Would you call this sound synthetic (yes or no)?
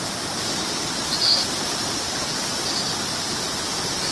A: no